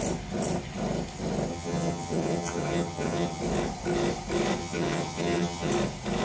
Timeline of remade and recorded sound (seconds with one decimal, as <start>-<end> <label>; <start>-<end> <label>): 0.0-1.5 recorded; 1.5-3.4 remade; 3.4-4.6 recorded; 4.6-5.7 remade; 5.7-6.2 recorded